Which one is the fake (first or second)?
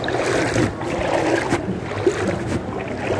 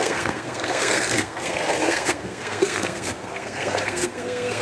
second